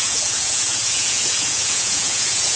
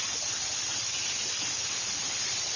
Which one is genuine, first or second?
second